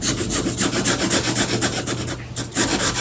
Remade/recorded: recorded